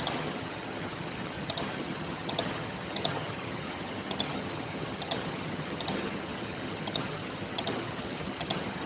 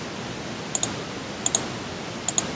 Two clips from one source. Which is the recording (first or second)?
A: second